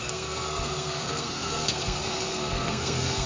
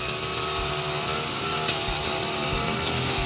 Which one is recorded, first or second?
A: second